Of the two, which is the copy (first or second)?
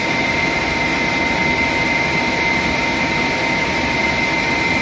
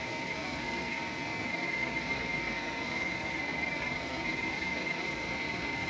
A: second